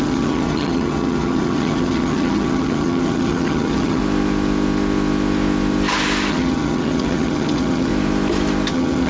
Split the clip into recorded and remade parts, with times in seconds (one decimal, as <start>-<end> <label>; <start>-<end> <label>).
0.0-4.0 remade; 4.0-6.3 recorded; 6.3-7.9 remade; 7.9-8.7 recorded; 8.7-9.1 remade